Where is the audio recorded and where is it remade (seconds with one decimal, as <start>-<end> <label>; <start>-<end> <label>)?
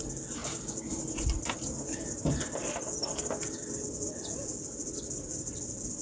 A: 0.0-6.0 recorded